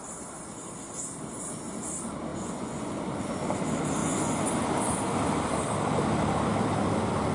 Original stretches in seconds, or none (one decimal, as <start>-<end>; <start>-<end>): 0.0-2.3; 2.9-4.0; 4.5-7.3